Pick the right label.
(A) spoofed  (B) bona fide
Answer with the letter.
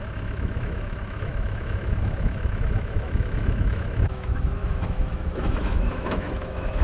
A